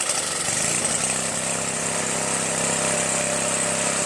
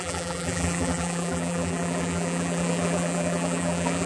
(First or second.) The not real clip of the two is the second